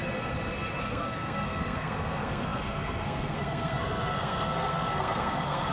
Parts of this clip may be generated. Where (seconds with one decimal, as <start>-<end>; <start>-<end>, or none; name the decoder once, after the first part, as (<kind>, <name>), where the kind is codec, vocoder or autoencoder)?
0.8-5.7 (codec, SNAC)